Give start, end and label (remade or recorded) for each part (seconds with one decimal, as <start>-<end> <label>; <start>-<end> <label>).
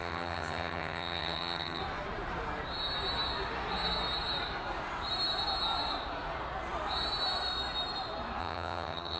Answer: 0.0-1.8 remade; 1.8-8.4 recorded; 8.4-9.2 remade